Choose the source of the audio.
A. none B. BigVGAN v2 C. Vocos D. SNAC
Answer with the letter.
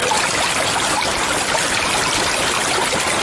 A